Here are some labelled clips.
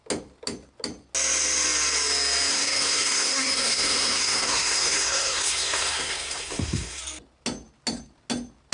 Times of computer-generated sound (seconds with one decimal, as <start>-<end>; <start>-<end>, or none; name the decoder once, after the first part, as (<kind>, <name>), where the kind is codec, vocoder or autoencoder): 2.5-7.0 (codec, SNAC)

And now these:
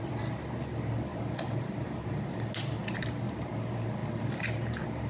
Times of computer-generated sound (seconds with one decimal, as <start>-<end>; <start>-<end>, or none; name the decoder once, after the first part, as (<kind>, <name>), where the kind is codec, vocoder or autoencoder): 1.1-2.2 (vocoder, BigVGAN v2); 2.8-3.5

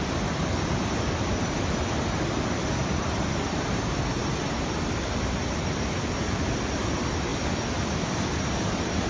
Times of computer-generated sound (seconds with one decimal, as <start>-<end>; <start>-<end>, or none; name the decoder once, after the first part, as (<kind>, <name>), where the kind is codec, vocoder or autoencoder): none

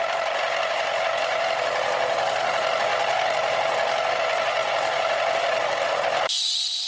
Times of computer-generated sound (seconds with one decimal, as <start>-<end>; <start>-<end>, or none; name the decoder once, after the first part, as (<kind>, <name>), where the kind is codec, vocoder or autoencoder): none

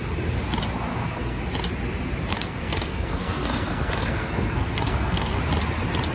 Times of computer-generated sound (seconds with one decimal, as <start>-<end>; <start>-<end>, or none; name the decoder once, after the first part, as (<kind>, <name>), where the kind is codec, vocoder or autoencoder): 0.9-1.4 (codec, SNAC); 2.3-5.4

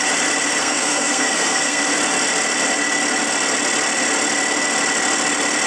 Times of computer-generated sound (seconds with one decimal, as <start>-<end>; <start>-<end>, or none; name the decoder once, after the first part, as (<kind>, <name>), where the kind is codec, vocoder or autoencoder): 0.6-1.8 (codec, SNAC)

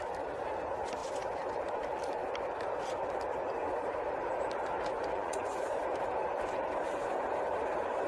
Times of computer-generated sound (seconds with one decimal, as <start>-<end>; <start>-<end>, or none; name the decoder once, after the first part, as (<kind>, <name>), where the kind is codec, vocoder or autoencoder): 4.9-5.8 (vocoder, Vocos)